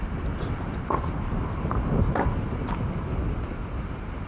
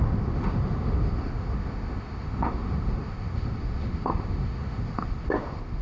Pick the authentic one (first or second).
first